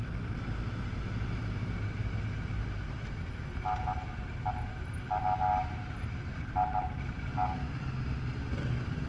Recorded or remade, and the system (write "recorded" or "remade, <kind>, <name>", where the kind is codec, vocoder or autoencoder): recorded